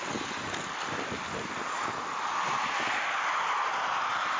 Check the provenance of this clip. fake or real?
real